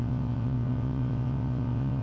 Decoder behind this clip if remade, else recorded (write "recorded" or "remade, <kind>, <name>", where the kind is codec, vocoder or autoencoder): remade, vocoder, WaveNeXt